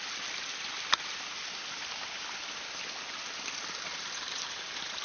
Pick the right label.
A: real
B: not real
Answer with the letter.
A